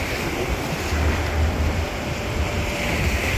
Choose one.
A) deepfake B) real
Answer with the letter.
A